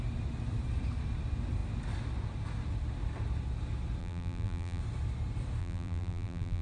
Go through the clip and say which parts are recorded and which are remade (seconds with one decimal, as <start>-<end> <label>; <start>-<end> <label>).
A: 0.0-4.0 recorded; 4.0-4.8 remade; 4.8-5.6 recorded; 5.6-6.6 remade